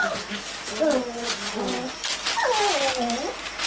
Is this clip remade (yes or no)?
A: no